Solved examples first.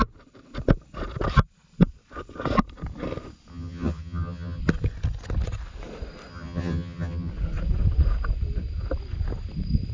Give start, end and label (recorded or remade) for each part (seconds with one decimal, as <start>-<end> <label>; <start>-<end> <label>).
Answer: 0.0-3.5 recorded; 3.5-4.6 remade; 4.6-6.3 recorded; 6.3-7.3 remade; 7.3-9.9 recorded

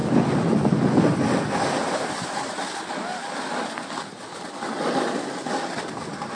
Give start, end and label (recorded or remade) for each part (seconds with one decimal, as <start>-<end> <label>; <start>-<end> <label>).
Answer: 0.0-6.3 recorded

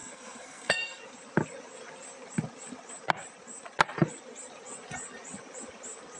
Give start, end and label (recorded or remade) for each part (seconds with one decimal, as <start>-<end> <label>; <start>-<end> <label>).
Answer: 0.0-1.0 remade; 1.0-6.2 recorded

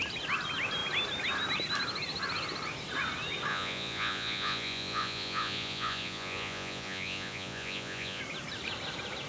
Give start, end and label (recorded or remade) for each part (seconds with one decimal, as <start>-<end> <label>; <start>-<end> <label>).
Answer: 0.0-3.5 recorded; 3.5-8.2 remade; 8.2-9.3 recorded

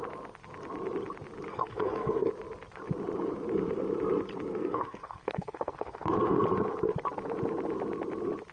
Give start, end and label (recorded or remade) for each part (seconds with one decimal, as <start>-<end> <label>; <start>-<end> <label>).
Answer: 0.0-1.5 recorded; 1.5-2.3 remade; 2.3-4.5 recorded; 4.5-6.1 remade; 6.1-8.5 recorded

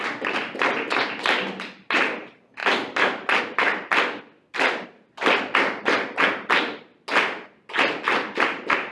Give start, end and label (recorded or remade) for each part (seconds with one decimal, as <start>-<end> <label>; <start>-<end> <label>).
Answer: 0.0-8.9 recorded